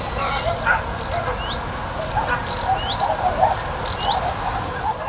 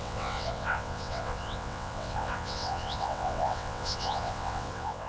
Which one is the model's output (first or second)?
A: second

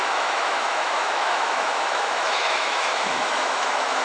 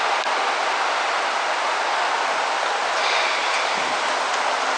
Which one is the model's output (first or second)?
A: first